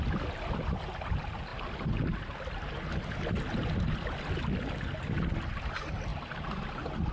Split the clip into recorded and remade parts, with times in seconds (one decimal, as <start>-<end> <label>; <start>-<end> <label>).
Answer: 0.0-6.1 recorded; 6.1-7.1 remade